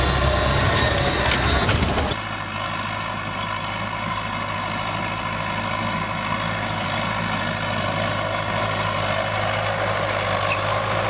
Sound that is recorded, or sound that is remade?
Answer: recorded